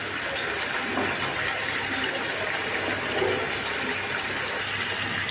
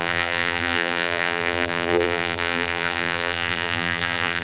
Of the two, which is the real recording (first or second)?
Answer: first